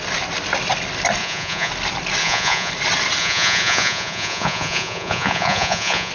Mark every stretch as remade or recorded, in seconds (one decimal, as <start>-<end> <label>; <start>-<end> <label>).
0.0-1.2 recorded; 1.2-1.7 remade; 1.7-2.2 recorded; 2.2-2.7 remade; 2.7-3.2 recorded; 3.2-6.1 remade